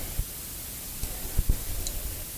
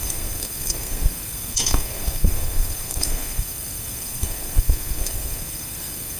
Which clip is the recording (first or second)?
first